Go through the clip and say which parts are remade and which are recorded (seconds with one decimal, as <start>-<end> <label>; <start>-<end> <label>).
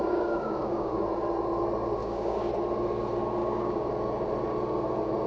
0.0-1.0 remade; 1.0-2.0 recorded; 2.0-2.5 remade; 2.5-3.4 recorded; 3.4-3.9 remade; 3.9-5.3 recorded